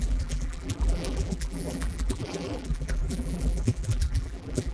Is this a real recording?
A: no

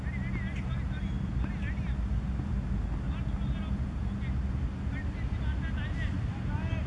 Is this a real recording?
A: yes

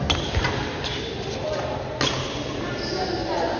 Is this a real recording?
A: yes